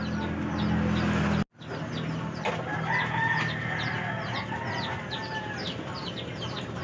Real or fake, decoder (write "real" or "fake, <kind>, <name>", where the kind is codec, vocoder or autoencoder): real